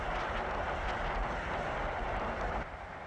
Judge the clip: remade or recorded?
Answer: recorded